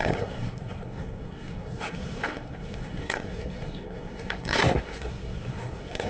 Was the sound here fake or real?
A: fake